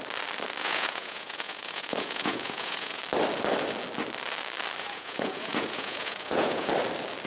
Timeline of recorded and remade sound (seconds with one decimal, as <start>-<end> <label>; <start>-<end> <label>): 0.0-0.6 recorded; 0.6-3.0 remade; 3.0-4.8 recorded; 4.8-6.7 remade; 6.7-7.3 recorded